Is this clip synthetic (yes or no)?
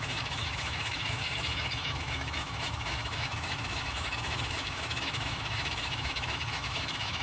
yes